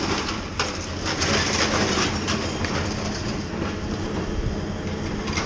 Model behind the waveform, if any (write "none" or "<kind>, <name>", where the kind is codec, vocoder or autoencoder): none